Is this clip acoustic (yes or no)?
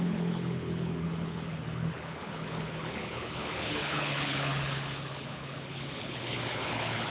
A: no